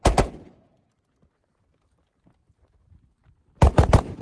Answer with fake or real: real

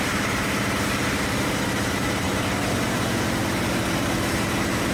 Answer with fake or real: real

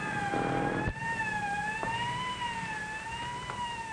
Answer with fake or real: real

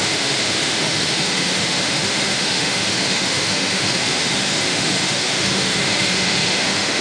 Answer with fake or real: fake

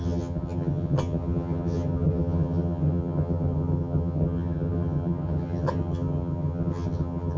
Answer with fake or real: fake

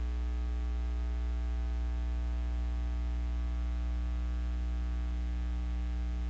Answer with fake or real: real